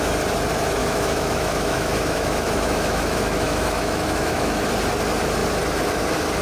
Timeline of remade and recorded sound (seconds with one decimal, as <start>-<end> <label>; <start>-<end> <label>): 0.0-0.8 recorded; 0.8-4.6 remade; 4.6-6.4 recorded